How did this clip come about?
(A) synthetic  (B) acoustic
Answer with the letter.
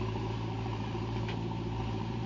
A